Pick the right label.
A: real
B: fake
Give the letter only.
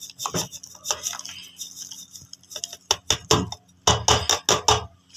A